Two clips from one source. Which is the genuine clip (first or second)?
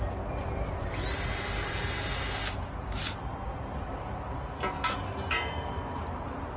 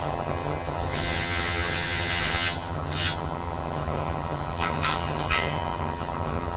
first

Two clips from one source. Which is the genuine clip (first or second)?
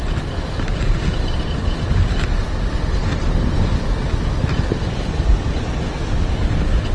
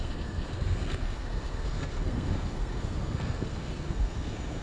first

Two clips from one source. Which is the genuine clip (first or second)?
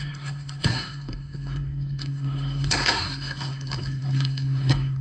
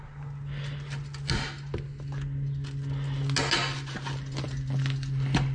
second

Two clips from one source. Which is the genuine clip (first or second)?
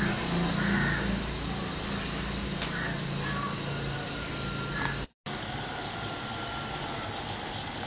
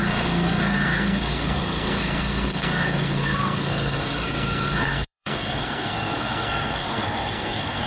first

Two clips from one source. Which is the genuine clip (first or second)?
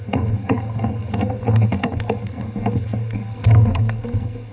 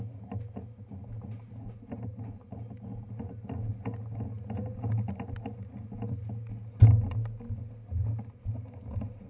second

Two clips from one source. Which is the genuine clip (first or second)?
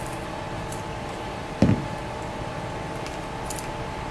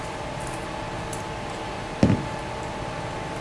second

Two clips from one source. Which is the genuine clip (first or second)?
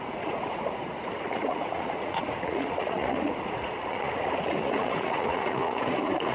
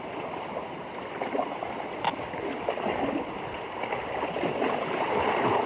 second